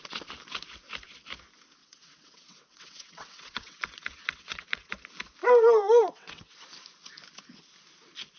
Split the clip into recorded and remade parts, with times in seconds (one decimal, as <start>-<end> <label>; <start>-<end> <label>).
0.0-1.8 recorded; 1.8-4.9 remade; 4.9-6.0 recorded; 6.0-6.5 remade; 6.5-8.4 recorded